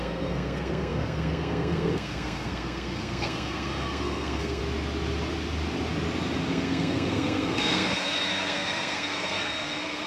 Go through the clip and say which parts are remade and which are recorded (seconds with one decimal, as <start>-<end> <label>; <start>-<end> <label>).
0.0-4.6 remade; 4.6-6.5 recorded; 6.5-10.1 remade